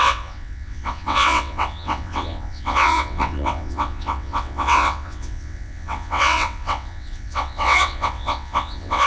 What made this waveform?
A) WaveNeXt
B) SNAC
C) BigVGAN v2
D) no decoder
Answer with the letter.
A